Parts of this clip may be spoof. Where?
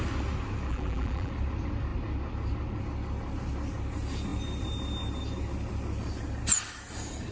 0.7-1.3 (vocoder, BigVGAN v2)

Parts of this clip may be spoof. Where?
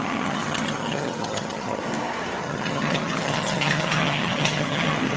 0.0-1.8 (vocoder, HiFi-GAN); 2.4-5.2